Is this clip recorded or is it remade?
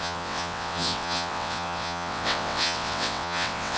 remade